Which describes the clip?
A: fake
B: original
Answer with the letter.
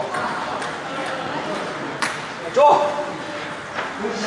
B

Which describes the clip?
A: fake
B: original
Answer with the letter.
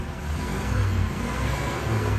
A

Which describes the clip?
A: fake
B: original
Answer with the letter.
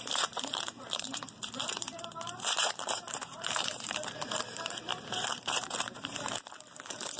A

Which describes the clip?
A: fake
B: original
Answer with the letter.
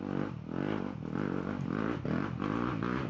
B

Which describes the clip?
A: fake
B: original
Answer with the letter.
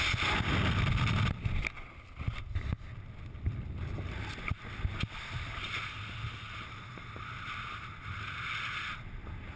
B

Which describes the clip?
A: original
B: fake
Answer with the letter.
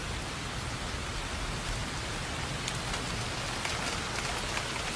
A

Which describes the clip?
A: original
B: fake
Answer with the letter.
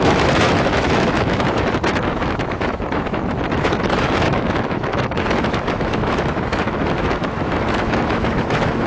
B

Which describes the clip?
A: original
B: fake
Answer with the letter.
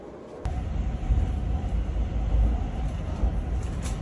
A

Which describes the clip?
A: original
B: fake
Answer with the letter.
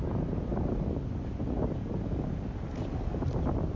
A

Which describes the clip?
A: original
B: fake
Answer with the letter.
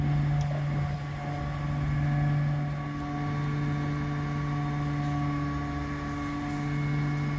A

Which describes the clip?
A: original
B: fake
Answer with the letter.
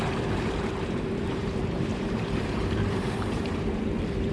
B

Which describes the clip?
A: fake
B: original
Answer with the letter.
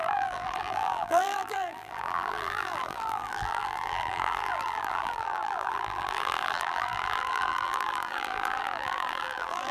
A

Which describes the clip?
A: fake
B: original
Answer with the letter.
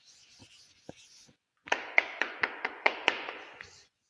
A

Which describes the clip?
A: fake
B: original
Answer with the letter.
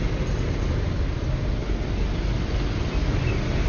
B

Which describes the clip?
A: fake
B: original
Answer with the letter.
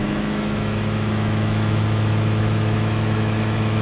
A